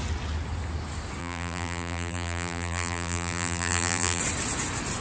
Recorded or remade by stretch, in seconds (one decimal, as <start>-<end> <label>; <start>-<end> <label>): 0.0-1.2 recorded; 1.2-4.2 remade; 4.2-5.0 recorded